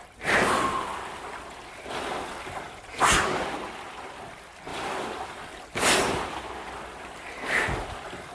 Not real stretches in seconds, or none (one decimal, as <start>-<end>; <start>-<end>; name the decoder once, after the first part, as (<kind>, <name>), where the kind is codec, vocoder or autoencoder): 4.7-6.4 (vocoder, BigVGAN v2)